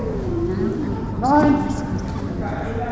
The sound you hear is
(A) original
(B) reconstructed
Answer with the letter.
A